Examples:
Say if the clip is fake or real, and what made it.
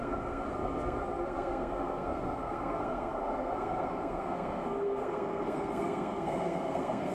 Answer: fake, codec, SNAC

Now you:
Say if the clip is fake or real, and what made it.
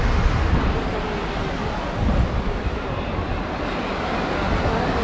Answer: real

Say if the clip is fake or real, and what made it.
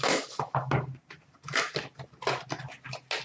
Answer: real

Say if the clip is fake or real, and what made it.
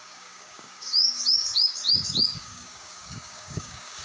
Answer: fake, codec, DAC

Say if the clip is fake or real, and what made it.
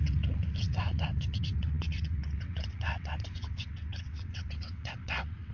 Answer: fake, vocoder, WaveNeXt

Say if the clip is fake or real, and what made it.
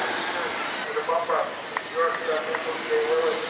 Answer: real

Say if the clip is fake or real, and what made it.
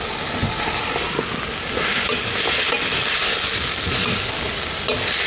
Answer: real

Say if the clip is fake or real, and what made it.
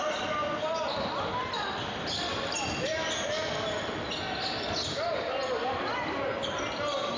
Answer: real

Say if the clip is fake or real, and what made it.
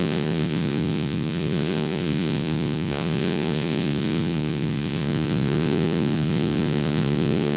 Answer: fake, vocoder, Vocos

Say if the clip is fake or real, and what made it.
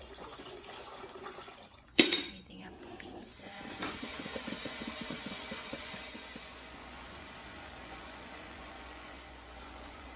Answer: fake, vocoder, Vocos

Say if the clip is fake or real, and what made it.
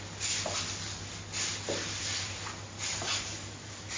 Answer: real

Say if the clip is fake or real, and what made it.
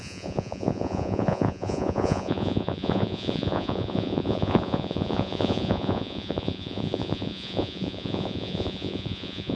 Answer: fake, vocoder, Vocos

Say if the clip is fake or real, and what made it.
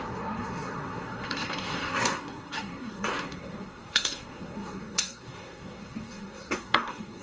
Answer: fake, codec, SNAC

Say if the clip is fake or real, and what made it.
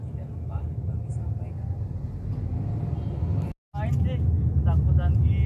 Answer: real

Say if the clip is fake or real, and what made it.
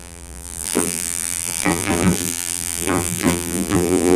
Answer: fake, vocoder, BigVGAN v2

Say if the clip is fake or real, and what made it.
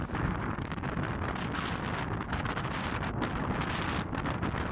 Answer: real